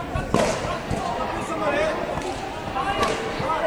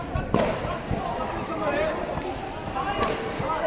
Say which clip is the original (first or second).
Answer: first